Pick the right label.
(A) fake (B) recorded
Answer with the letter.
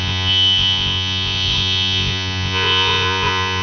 A